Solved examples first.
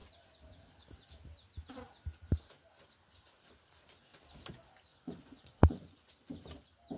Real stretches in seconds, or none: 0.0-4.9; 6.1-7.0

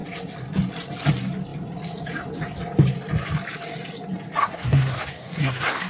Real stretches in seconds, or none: 0.0-4.4

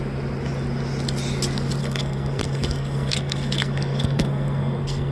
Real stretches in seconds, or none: 0.0-1.8

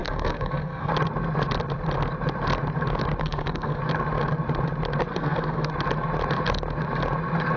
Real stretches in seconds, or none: 0.9-3.2; 3.8-5.1; 5.7-7.6

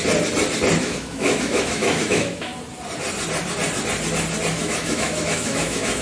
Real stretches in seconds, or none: 0.0-0.8; 2.5-4.5

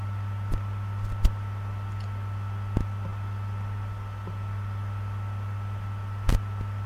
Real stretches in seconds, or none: 0.0-6.9

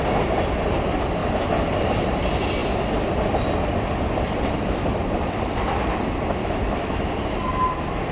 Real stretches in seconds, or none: 0.0-6.4; 7.1-8.1

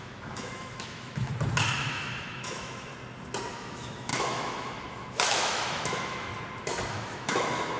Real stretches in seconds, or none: 1.3-1.9; 2.9-3.5; 6.3-6.9